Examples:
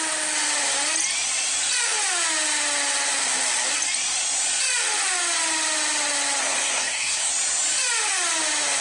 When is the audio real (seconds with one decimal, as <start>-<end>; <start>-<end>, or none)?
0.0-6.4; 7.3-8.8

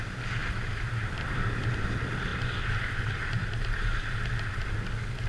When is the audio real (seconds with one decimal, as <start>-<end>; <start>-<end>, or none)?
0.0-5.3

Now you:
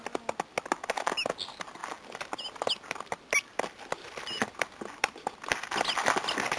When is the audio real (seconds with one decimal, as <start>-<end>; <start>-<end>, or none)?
0.0-6.6